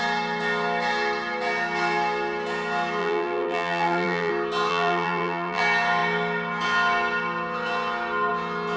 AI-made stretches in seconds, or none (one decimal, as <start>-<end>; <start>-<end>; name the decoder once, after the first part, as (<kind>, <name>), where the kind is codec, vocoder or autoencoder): 3.0-4.3 (vocoder, BigVGAN v2); 4.7-5.6